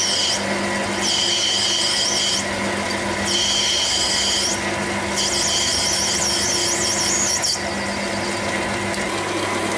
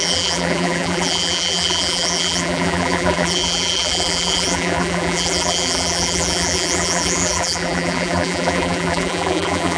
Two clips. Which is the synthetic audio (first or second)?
second